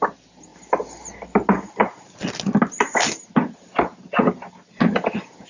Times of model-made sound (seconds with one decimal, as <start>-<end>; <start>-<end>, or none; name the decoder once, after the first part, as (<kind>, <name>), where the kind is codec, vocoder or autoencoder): none